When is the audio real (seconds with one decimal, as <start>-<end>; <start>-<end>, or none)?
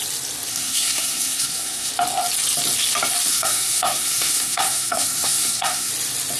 0.0-0.5; 1.9-3.3; 5.9-6.4